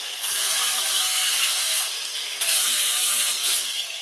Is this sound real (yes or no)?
no